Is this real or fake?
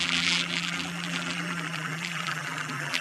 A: fake